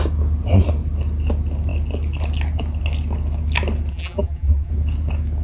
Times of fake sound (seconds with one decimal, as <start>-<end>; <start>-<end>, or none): 3.9-4.7